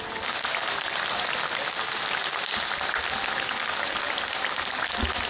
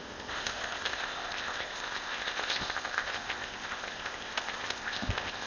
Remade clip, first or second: second